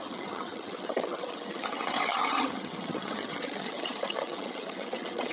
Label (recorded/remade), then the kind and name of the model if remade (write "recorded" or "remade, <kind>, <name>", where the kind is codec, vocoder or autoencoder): remade, vocoder, HiFi-GAN